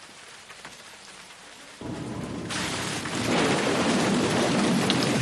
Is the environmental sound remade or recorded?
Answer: remade